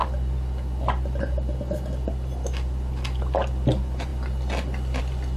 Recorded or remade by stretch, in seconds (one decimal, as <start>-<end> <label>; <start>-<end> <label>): 0.0-5.4 recorded

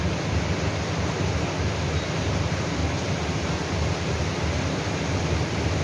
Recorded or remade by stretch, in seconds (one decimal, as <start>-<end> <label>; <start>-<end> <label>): 0.0-2.8 remade; 2.8-4.9 recorded; 4.9-5.8 remade

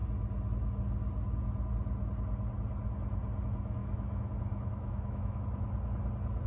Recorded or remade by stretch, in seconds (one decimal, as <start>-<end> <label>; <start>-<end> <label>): 0.0-3.8 recorded; 3.8-5.4 remade; 5.4-6.5 recorded

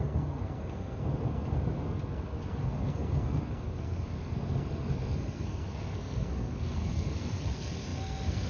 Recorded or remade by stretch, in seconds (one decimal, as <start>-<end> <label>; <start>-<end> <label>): 0.0-8.5 remade

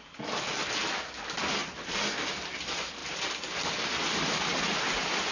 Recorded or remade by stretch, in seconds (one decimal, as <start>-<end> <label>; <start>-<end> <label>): 0.0-5.3 recorded

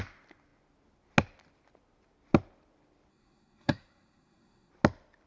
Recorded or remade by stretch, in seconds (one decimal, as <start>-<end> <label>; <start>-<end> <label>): 0.0-3.1 recorded; 3.1-4.7 remade; 4.7-5.3 recorded

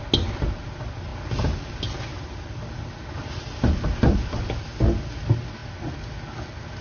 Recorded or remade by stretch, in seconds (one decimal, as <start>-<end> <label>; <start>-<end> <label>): 0.0-6.8 recorded

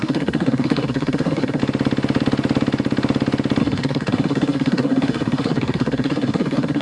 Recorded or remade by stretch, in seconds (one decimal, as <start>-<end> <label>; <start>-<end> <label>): 0.0-1.6 remade; 1.6-3.6 recorded; 3.6-6.8 remade